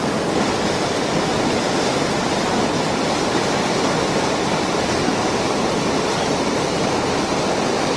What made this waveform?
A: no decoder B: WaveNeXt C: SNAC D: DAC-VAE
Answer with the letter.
A